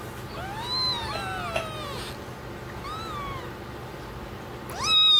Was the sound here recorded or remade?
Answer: recorded